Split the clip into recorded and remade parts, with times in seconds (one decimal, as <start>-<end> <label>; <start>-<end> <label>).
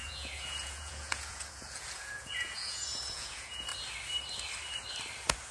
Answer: 0.0-3.7 remade; 3.7-5.5 recorded